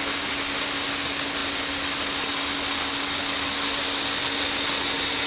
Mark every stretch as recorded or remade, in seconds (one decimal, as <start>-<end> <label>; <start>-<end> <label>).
0.0-5.3 recorded